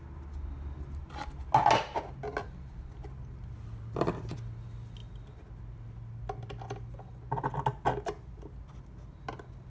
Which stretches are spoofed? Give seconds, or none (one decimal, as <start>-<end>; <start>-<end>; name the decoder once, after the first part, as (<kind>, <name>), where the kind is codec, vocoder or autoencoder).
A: none